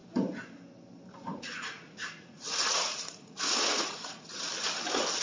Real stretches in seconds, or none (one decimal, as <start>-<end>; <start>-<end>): 0.0-1.3; 4.4-5.2